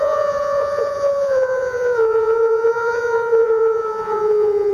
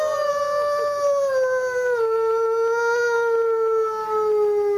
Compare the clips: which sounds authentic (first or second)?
second